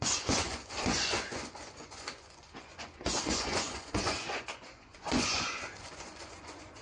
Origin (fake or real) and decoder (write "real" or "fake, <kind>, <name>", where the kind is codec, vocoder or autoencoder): fake, vocoder, Vocos